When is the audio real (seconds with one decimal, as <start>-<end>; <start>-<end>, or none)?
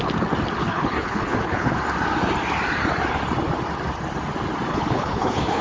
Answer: 0.0-0.6; 1.8-4.7